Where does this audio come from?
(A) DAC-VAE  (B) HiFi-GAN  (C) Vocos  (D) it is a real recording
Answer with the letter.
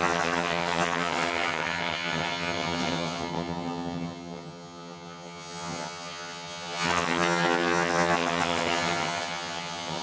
B